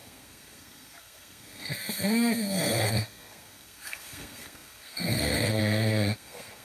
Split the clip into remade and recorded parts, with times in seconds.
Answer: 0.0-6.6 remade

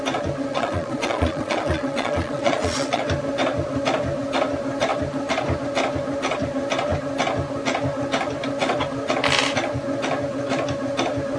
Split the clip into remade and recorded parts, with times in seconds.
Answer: 0.0-0.5 recorded; 0.5-3.0 remade; 3.0-11.4 recorded

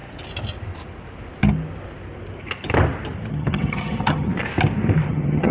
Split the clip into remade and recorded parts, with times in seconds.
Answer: 0.0-3.3 recorded; 3.3-4.3 remade; 4.3-5.1 recorded; 5.1-5.5 remade

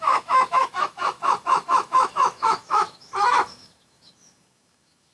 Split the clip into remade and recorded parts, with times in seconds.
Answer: 0.0-5.1 remade

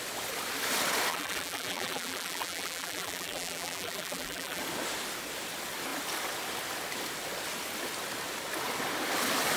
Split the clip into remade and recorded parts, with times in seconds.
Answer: 0.0-1.1 recorded; 1.1-4.6 remade; 4.6-9.6 recorded

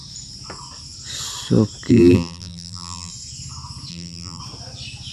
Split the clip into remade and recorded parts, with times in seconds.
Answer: 0.0-1.9 recorded; 1.9-3.1 remade; 3.1-3.9 recorded; 3.9-4.4 remade; 4.4-5.1 recorded